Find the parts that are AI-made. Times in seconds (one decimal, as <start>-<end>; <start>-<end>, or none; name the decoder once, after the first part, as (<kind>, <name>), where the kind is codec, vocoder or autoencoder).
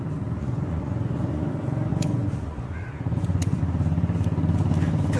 0.4-1.5 (vocoder, Vocos); 1.9-3.6